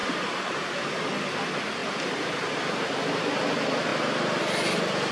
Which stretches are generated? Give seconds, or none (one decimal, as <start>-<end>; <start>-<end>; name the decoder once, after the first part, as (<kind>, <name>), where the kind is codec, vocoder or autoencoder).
0.0-1.0 (vocoder, BigVGAN v2); 1.8-3.2

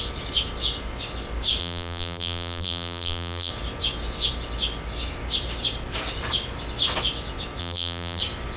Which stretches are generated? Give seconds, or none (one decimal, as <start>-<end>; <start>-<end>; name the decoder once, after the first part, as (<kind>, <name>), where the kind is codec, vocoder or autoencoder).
1.6-3.5 (vocoder, BigVGAN v2); 7.6-8.2

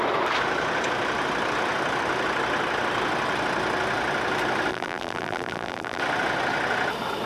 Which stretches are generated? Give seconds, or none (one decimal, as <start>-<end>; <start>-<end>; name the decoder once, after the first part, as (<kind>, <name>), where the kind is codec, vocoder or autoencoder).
4.7-6.0 (vocoder, BigVGAN v2)

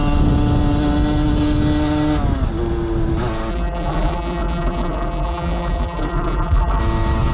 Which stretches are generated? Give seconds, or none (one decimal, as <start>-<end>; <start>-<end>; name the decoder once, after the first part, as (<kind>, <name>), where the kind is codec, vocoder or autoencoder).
3.5-6.8 (vocoder, BigVGAN v2)

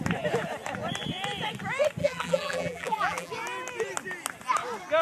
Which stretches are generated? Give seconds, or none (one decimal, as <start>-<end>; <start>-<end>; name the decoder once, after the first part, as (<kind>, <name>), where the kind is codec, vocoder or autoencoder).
2.0-3.3 (vocoder, BigVGAN v2)

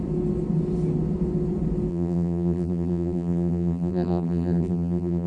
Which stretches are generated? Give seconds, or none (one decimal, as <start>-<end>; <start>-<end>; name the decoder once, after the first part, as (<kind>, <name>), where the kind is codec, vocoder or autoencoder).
1.9-5.3 (vocoder, BigVGAN v2)

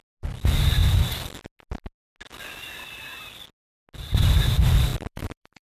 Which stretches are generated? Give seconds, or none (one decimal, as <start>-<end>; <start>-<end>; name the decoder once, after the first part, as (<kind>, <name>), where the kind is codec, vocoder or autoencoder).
4.9-5.6 (vocoder, BigVGAN v2)